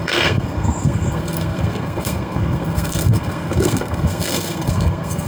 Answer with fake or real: fake